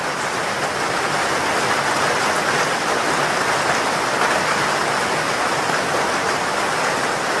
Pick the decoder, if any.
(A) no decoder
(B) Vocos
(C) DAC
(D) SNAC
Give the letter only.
A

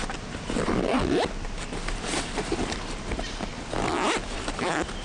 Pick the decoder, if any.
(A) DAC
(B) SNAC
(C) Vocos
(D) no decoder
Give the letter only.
D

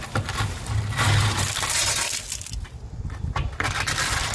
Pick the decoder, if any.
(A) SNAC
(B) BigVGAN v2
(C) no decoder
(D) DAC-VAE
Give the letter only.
C